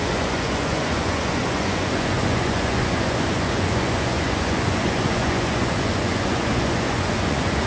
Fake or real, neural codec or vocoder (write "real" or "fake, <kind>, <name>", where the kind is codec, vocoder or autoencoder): fake, vocoder, Vocos